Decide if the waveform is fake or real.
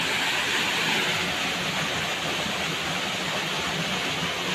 real